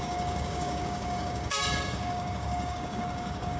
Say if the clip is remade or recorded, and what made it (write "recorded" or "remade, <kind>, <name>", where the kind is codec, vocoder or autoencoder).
remade, codec, DAC